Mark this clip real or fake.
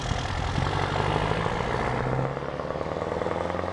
real